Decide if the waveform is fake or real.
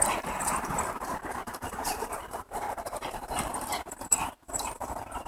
fake